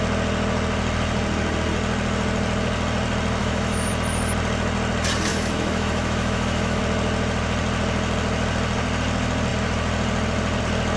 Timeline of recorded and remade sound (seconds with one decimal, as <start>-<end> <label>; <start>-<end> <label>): 0.0-3.4 recorded; 3.4-3.9 remade; 3.9-5.3 recorded; 5.3-6.8 remade; 6.8-11.0 recorded